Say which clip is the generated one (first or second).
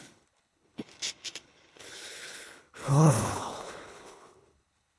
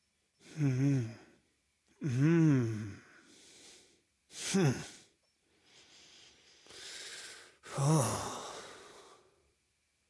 first